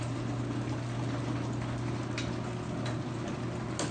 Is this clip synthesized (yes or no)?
no